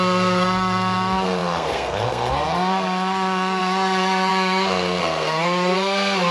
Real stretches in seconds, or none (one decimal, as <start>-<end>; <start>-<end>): none